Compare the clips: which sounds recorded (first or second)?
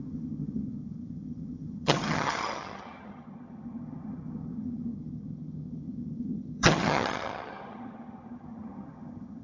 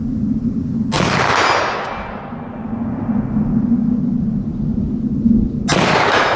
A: second